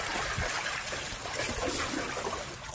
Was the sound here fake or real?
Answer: real